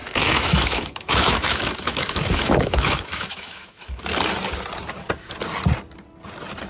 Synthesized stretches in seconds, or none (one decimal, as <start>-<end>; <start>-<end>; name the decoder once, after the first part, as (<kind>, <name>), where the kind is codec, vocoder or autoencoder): 0.0-4.0 (autoencoder, DAC-VAE)